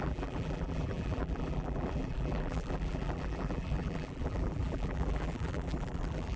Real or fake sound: fake